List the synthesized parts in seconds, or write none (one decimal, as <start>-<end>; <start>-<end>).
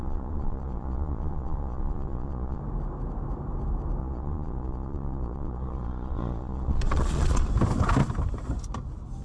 0.0-2.6; 4.0-7.5